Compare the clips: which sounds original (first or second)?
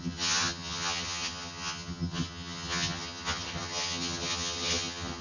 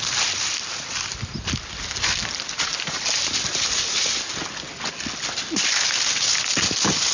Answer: second